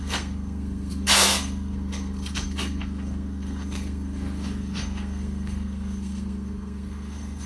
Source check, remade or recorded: remade